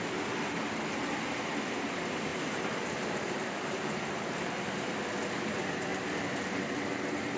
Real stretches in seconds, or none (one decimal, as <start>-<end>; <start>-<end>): 0.0-2.3; 4.9-5.9; 6.4-7.4